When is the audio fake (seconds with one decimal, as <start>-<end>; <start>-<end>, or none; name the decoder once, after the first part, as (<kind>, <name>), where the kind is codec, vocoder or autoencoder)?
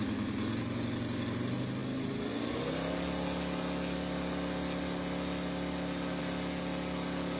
none